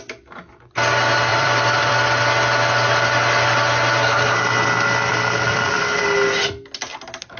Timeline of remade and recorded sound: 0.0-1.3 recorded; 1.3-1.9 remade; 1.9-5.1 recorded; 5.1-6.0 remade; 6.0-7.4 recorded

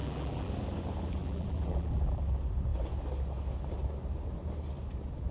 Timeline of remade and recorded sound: 0.0-0.5 remade; 0.5-1.2 recorded; 1.2-2.2 remade; 2.2-5.3 recorded

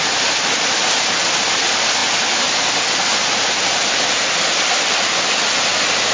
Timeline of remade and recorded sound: 0.0-6.1 recorded

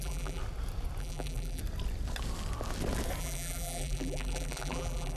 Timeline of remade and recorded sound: 0.0-0.4 remade; 0.4-1.0 recorded; 1.0-1.6 remade; 1.6-3.2 recorded; 3.2-5.2 remade

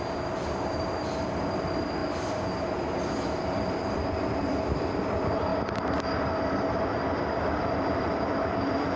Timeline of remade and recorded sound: 0.0-2.0 remade; 2.0-3.8 recorded; 3.8-9.0 remade